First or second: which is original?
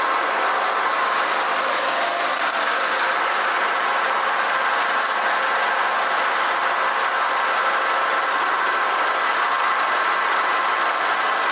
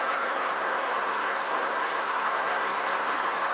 first